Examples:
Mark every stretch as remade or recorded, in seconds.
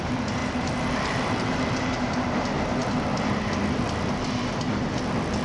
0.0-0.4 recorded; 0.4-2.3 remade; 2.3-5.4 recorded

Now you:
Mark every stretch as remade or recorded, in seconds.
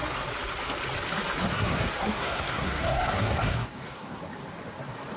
0.0-1.4 recorded; 1.4-4.2 remade; 4.2-5.2 recorded